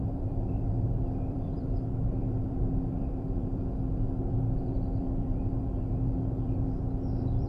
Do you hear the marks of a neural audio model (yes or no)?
yes